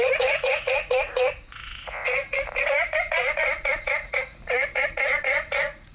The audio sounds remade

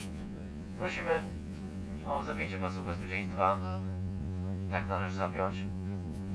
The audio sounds remade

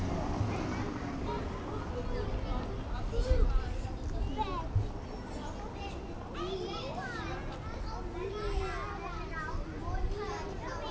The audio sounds recorded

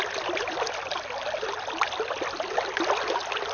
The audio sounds recorded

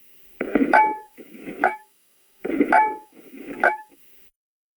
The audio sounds remade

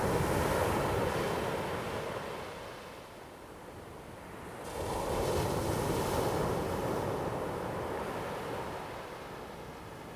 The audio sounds recorded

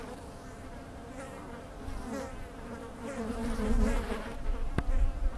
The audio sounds remade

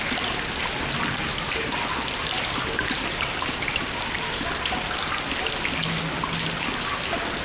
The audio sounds recorded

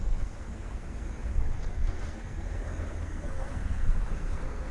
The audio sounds remade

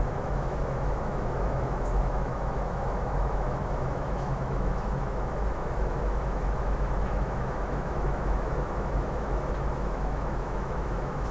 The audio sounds remade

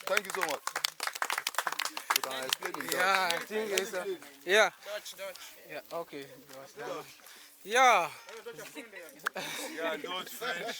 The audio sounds recorded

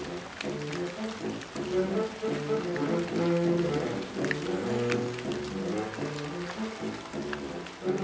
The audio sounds recorded